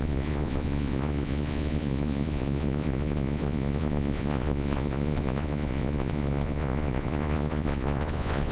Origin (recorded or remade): remade